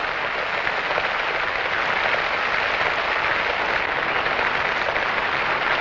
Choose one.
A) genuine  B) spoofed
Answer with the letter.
A